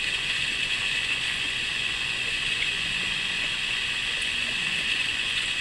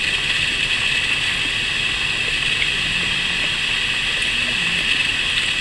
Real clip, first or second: second